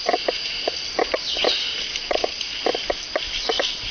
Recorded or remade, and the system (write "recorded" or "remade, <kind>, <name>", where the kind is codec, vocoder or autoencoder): recorded